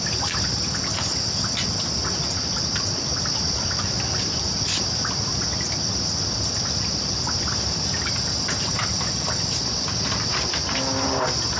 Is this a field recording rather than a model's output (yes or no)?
yes